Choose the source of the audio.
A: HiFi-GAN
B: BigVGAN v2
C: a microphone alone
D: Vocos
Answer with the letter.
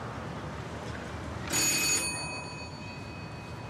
C